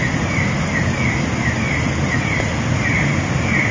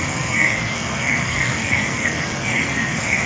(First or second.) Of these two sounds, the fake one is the second